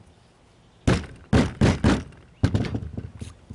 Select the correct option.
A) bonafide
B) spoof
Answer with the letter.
A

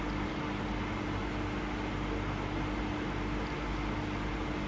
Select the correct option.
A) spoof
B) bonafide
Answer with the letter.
B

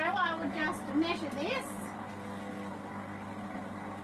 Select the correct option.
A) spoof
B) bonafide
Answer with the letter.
B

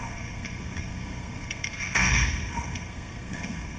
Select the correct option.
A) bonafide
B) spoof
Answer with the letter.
B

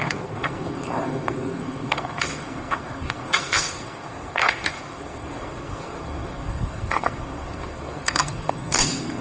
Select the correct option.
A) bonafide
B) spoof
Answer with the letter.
B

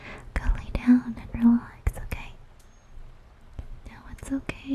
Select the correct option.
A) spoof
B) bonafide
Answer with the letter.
B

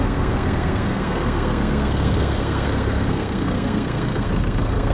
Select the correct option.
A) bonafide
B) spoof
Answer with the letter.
B